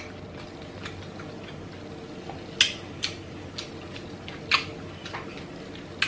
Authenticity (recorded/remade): recorded